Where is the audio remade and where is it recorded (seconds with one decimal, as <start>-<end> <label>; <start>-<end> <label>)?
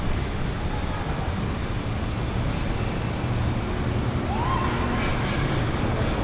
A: 0.0-6.2 recorded